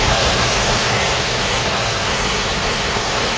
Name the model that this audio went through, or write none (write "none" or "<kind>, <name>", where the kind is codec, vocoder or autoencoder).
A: codec, SNAC